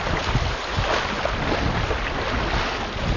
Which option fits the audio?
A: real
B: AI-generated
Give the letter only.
A